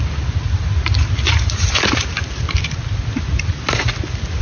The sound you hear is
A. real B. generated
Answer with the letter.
A